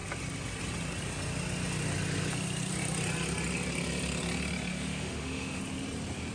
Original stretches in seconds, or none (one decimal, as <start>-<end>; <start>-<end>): 0.0-4.7; 5.6-6.3